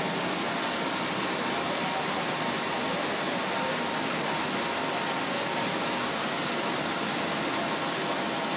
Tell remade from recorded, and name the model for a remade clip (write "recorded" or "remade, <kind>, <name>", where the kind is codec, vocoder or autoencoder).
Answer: recorded